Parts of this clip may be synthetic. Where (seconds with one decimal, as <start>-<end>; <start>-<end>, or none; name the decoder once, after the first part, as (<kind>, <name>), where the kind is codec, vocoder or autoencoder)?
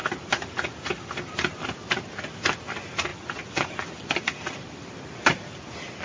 0.0-1.6 (vocoder, BigVGAN v2); 3.1-4.9